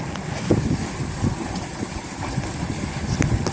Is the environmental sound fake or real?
real